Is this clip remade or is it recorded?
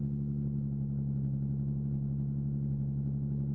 recorded